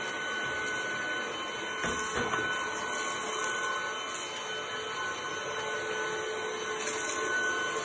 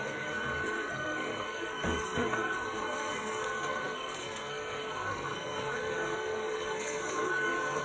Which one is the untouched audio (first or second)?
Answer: first